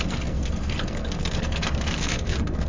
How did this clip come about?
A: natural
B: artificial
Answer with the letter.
B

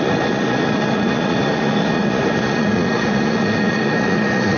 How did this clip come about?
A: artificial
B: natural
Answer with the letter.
A